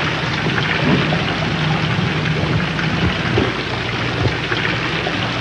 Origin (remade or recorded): recorded